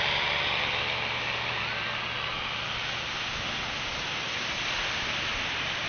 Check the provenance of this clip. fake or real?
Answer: real